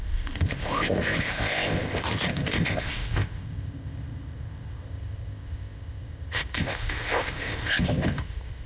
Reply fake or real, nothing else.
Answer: fake